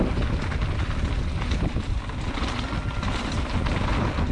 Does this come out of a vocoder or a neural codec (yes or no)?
no